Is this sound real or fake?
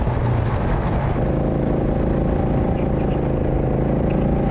real